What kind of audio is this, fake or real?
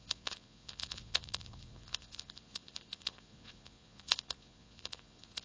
fake